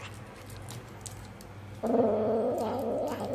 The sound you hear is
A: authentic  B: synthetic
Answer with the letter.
A